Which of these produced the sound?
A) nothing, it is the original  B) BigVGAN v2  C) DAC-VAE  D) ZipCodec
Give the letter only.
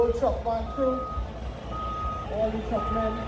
A